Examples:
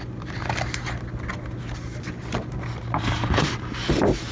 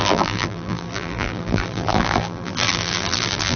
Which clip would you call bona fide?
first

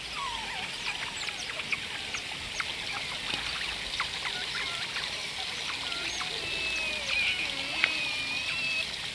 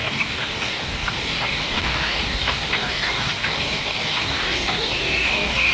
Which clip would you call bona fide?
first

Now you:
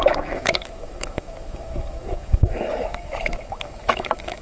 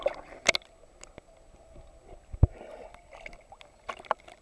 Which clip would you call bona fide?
second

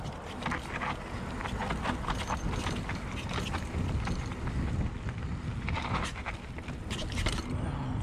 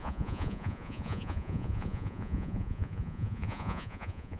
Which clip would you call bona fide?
first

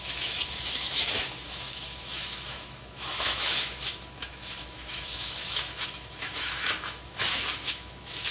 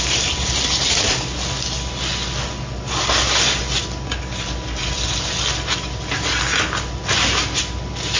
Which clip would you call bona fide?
second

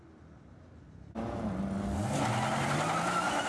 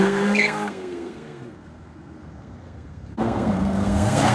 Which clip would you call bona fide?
first